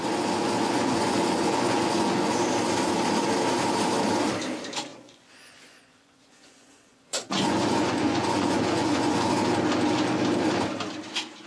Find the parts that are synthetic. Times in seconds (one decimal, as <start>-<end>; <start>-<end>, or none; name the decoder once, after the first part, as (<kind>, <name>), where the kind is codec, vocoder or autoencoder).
0.4-2.4 (vocoder, Vocos); 4.9-9.3